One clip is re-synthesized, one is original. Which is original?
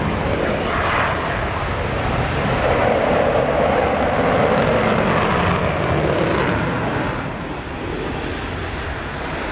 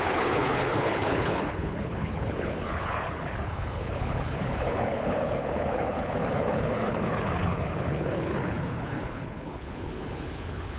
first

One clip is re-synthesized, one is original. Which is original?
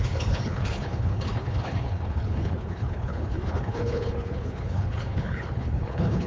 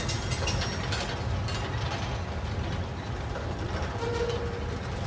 second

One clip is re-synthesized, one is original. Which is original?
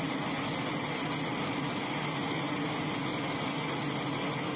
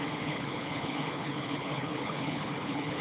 first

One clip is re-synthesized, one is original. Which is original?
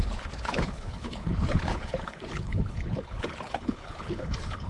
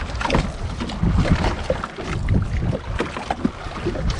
second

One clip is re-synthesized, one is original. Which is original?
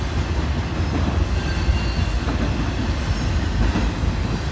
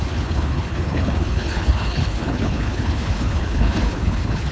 first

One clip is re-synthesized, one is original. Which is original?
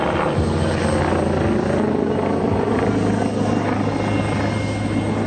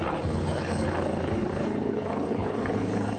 first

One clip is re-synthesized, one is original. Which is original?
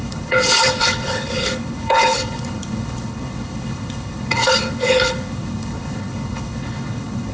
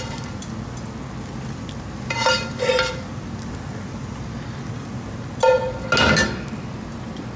second